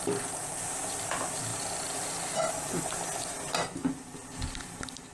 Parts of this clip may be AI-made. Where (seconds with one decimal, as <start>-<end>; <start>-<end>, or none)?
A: none